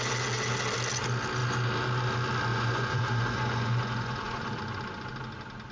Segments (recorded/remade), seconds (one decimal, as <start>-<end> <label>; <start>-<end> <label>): 0.0-2.5 recorded; 2.5-4.6 remade; 4.6-5.7 recorded